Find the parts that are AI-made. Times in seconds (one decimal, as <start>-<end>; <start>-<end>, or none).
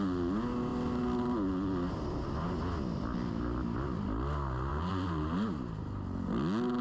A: 4.7-5.8